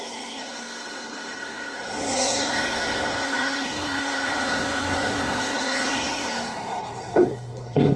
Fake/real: fake